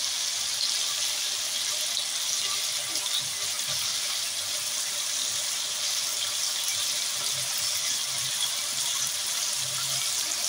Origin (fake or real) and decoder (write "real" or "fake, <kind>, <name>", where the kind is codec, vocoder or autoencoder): real